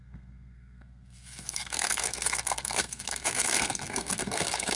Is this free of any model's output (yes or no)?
no